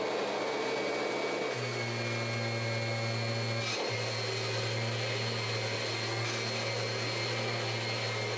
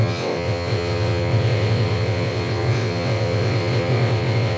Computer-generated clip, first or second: second